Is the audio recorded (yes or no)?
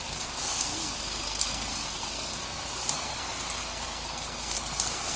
no